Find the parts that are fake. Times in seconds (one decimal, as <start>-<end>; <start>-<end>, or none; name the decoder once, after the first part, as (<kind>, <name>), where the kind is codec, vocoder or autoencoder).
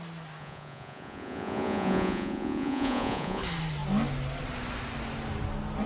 0.4-3.4 (vocoder, Vocos)